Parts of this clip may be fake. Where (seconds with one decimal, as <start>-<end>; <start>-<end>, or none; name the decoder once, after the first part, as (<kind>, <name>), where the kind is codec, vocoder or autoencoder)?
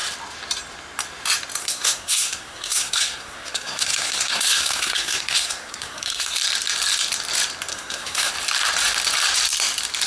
1.6-6.4 (codec, SNAC); 7.7-8.3